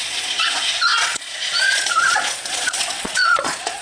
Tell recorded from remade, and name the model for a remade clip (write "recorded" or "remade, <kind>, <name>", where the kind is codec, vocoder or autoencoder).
remade, vocoder, Vocos